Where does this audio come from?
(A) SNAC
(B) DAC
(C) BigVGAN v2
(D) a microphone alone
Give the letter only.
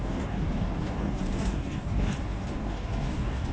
B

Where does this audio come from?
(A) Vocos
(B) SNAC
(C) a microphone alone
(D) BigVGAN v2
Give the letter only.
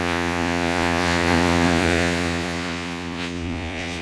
A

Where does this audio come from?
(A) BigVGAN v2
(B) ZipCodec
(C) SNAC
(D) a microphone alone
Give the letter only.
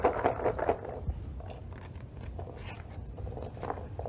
D